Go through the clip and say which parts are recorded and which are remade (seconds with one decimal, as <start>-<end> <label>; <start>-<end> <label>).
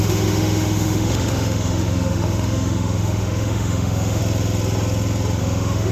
0.0-4.2 remade; 4.2-5.4 recorded; 5.4-5.9 remade